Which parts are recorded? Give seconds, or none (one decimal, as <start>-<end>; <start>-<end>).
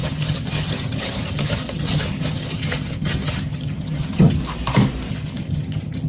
4.4-5.1